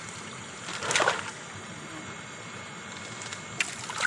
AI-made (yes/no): no